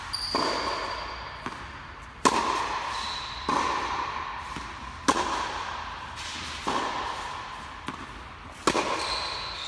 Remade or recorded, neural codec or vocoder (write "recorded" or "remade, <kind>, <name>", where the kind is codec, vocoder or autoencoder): recorded